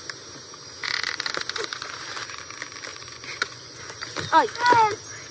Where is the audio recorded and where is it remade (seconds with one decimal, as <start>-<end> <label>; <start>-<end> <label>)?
0.0-0.8 recorded; 0.8-1.9 remade; 1.9-2.9 recorded; 2.9-3.8 remade; 3.8-5.3 recorded